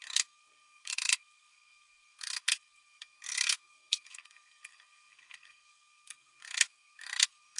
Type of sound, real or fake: fake